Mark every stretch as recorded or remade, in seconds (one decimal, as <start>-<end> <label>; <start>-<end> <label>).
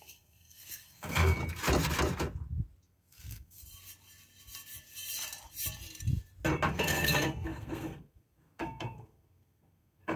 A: 0.0-1.4 remade; 1.4-2.8 recorded; 2.8-3.6 remade; 3.6-6.7 recorded; 6.7-10.2 remade